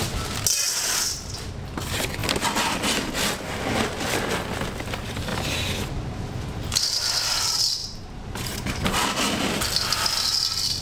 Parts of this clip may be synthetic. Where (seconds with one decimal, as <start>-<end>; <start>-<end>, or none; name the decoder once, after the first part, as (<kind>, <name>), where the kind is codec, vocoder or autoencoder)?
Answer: 5.3-6.8 (vocoder, BigVGAN v2); 7.8-9.3